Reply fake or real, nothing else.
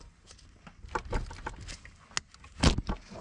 real